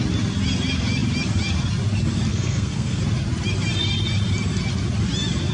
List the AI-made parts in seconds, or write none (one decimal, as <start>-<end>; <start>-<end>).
2.3-3.0

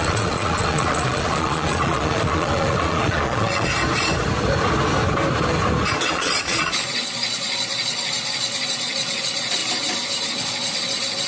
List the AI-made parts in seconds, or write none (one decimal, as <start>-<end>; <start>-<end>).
0.0-3.7; 6.1-9.6; 10.4-11.3

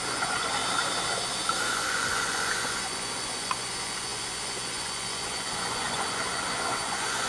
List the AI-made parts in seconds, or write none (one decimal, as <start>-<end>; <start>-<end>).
0.0-0.6; 1.6-7.3

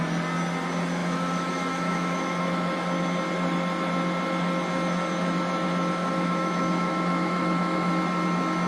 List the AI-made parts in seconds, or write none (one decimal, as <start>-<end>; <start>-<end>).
1.0-2.7; 6.0-7.9

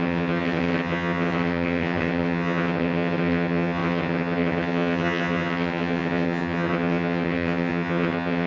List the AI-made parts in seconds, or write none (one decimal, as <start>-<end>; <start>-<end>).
0.0-8.5